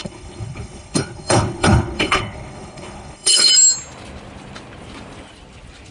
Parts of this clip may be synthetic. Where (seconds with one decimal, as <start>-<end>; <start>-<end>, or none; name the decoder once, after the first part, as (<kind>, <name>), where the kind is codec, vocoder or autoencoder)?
0.0-3.5 (codec, HILCodec)